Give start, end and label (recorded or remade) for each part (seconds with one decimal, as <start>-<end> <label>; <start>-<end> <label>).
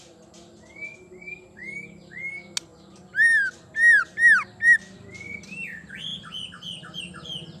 0.0-7.6 recorded